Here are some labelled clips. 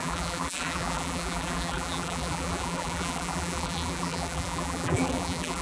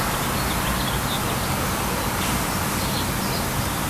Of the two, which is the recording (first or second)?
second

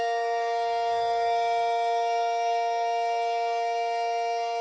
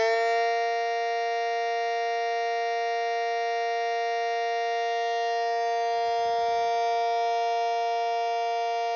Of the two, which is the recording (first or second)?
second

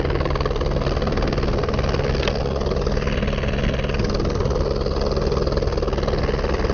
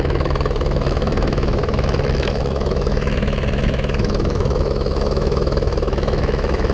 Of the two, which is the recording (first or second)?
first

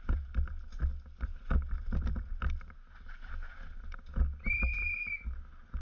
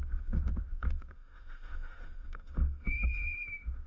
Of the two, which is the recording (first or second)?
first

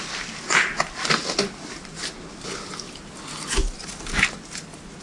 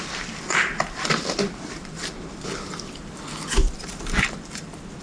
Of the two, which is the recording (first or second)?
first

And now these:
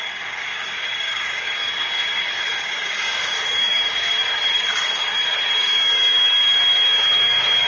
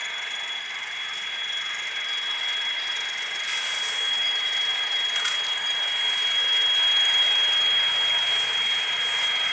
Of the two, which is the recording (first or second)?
second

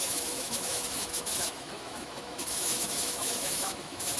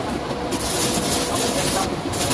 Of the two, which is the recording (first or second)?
second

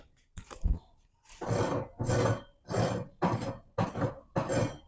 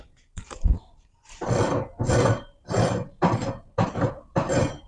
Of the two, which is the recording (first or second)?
first